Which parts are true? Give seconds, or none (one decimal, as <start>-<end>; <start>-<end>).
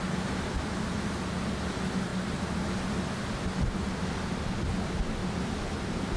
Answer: 0.0-5.2